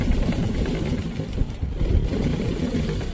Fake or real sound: real